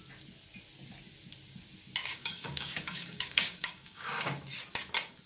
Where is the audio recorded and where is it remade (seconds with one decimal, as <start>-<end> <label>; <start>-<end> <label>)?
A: 0.0-2.0 recorded; 2.0-4.4 remade; 4.4-5.3 recorded